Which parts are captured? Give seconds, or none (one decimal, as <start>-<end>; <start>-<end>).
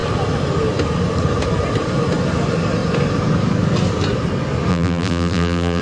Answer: 0.0-4.7